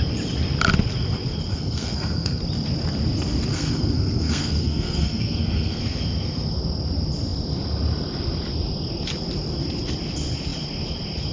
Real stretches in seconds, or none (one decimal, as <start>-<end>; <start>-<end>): 0.0-1.5; 2.4-3.5; 5.8-11.3